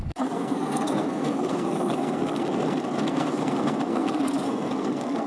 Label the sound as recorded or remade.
remade